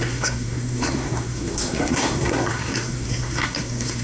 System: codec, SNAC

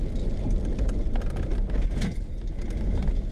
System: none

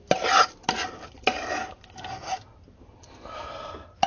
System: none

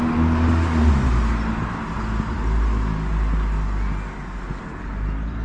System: none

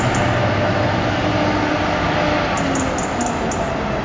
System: none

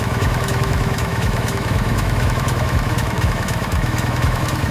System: autoencoder, DAC-VAE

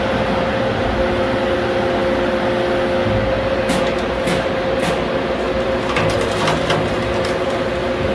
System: none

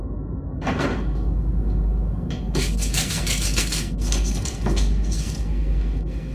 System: codec, SNAC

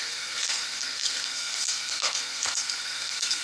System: codec, SNAC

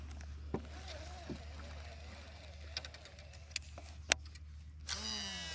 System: none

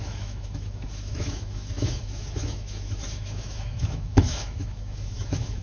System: autoencoder, DAC-VAE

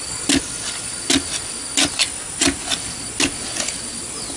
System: none